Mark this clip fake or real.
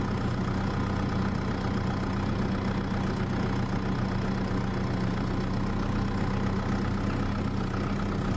real